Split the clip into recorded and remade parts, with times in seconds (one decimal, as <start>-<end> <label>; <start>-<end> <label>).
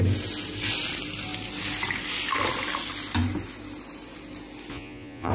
0.0-4.7 recorded; 4.7-5.3 remade